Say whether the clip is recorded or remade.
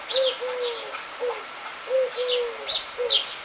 recorded